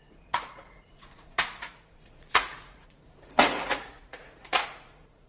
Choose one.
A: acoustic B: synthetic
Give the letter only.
B